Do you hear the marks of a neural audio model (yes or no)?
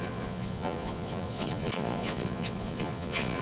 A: yes